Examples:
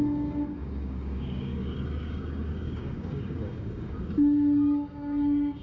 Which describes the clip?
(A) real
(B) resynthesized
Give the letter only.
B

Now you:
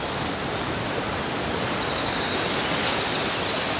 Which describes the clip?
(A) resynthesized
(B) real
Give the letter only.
B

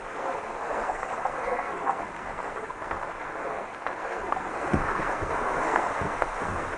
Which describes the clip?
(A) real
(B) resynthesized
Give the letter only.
B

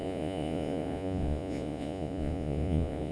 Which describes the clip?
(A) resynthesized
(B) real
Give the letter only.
A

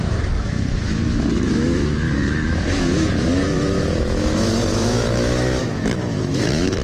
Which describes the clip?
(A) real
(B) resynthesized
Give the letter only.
B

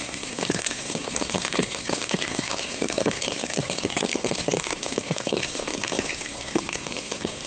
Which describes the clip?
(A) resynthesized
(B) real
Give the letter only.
A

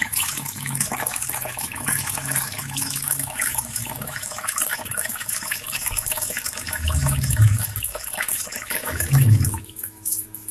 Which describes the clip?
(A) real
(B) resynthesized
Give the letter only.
B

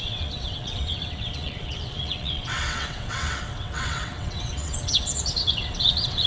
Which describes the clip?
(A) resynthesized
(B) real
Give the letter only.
A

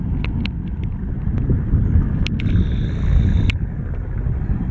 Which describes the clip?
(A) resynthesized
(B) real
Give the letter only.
B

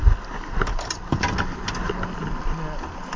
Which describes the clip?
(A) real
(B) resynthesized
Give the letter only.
A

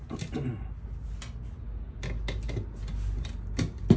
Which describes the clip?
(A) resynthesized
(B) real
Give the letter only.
B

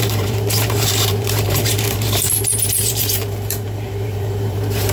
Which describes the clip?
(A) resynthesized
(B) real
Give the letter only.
A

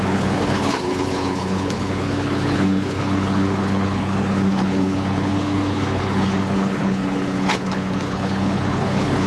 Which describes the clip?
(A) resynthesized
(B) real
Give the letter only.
A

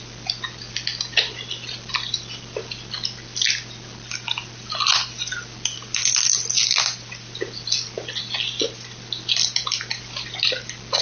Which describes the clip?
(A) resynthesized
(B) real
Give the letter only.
B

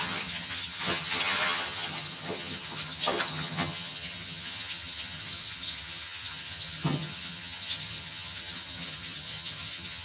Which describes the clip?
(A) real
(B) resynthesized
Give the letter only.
B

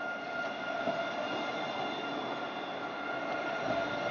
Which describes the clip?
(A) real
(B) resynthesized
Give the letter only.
A